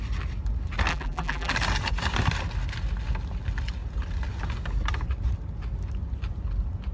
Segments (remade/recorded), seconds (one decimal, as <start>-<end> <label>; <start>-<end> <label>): 0.0-0.9 recorded; 0.9-1.5 remade; 1.5-6.9 recorded